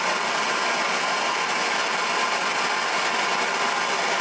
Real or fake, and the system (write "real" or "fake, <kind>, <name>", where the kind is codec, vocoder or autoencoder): real